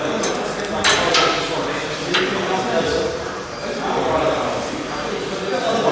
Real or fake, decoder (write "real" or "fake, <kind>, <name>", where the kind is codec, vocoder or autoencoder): fake, vocoder, BigVGAN v2